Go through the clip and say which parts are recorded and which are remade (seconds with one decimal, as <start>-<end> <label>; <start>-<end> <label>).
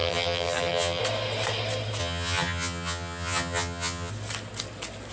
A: 0.0-1.0 remade; 1.0-2.0 recorded; 2.0-4.1 remade; 4.1-5.1 recorded